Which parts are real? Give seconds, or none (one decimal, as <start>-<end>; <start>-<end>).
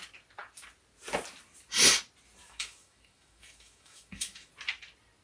0.0-2.4; 4.5-5.2